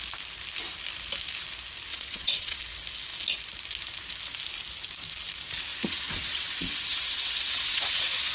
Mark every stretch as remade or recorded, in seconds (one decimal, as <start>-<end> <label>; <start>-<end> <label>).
0.0-1.9 recorded; 1.9-2.6 remade; 2.6-5.7 recorded; 5.7-8.3 remade